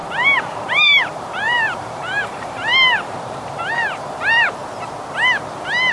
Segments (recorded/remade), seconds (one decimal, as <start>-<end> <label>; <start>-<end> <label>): 0.0-4.6 remade; 4.6-5.9 recorded